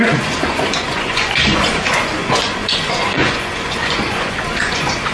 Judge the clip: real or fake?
fake